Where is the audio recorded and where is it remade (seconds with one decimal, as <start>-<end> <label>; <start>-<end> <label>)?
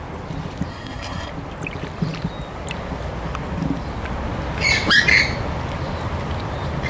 0.0-0.7 recorded; 0.7-1.3 remade; 1.3-6.9 recorded